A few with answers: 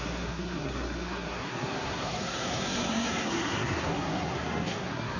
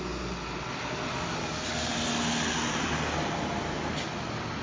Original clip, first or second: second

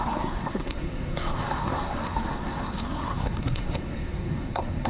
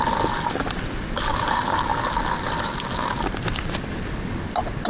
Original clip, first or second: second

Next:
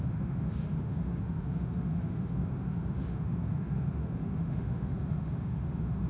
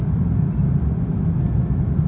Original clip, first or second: second